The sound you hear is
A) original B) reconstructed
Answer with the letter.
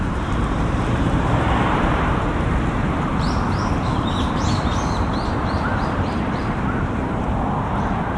B